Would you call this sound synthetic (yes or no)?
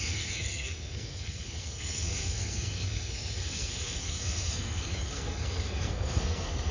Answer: yes